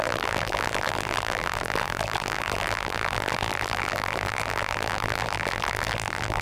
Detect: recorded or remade remade